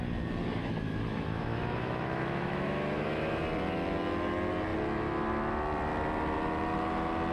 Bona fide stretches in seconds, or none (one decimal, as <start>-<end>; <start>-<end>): 0.0-0.6; 3.4-7.3